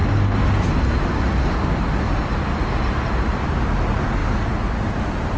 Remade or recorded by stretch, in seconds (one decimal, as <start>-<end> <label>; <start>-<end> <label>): 0.0-5.4 recorded